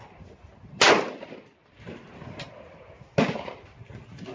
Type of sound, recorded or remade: recorded